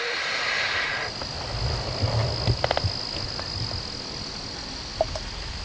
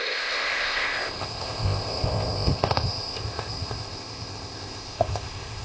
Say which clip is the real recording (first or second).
first